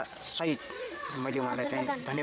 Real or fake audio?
fake